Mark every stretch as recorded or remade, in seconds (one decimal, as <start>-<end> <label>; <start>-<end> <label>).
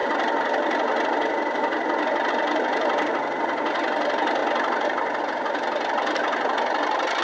0.0-7.2 recorded